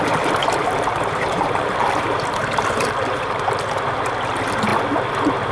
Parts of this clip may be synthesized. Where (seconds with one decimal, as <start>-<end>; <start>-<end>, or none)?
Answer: 0.4-3.7